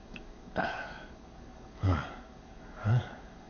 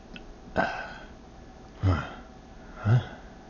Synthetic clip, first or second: first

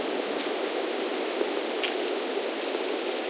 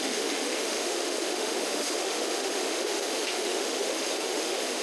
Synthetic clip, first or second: second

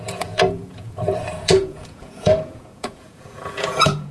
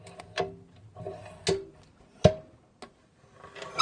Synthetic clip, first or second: first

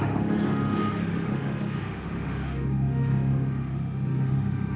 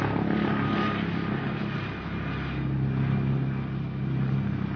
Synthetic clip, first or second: first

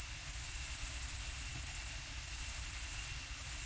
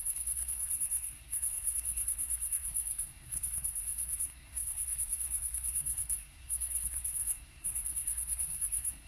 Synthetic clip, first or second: second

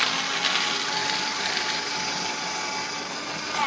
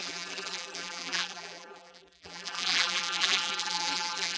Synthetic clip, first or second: second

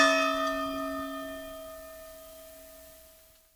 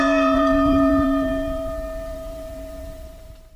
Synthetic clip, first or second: second